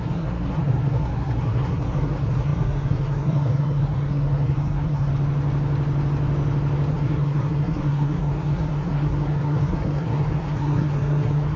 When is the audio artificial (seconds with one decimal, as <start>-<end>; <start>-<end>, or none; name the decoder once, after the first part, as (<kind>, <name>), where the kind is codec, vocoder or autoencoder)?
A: 0.0-5.1 (codec, SNAC); 6.9-11.6